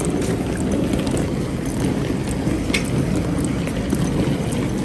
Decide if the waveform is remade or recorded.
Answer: recorded